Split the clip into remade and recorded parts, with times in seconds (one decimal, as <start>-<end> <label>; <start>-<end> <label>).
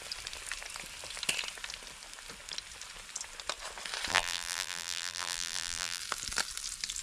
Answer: 0.0-4.1 recorded; 4.1-6.0 remade; 6.0-7.0 recorded